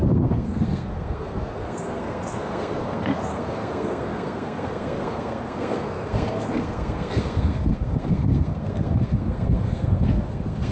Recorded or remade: remade